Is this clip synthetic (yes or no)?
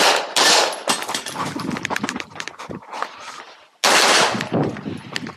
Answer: no